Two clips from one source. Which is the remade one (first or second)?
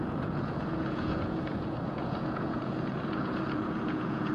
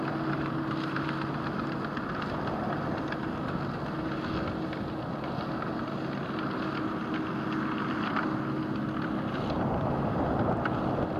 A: first